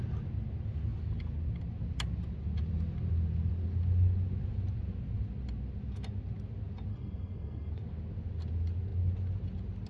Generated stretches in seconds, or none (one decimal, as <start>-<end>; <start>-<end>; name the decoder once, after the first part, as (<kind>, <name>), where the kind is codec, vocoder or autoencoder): 6.9-7.7 (codec, SNAC)